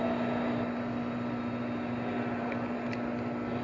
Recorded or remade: recorded